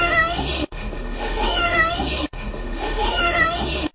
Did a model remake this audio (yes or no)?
yes